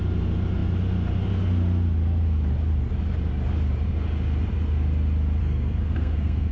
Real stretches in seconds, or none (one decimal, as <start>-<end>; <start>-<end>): 0.0-5.4